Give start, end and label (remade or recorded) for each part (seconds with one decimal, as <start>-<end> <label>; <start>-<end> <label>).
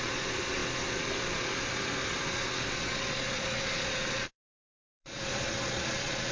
0.0-6.3 remade